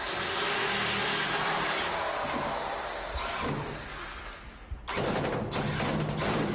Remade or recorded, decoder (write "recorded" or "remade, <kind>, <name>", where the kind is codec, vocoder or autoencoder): recorded